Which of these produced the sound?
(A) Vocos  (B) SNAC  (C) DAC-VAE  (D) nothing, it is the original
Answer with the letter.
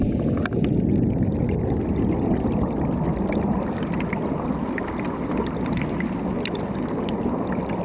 D